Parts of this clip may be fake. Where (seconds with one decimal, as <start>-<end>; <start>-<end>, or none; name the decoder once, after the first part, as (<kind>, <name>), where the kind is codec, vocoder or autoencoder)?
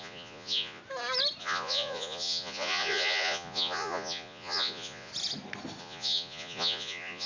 0.0-0.8 (vocoder, Vocos); 1.4-5.1; 5.8-7.3